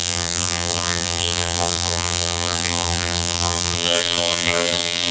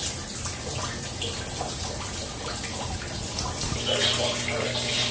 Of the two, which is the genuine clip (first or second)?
second